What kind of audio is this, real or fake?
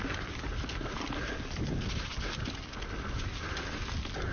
real